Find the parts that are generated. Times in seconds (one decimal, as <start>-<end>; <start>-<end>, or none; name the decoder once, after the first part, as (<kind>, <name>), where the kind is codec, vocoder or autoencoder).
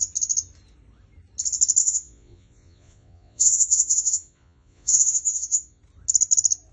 1.8-5.8 (vocoder, Vocos)